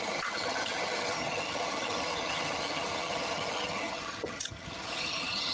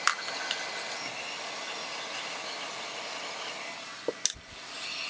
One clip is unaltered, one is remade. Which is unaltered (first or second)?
second